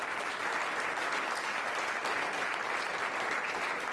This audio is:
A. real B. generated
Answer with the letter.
A